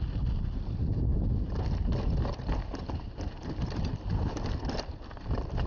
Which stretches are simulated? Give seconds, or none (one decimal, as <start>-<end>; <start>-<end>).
none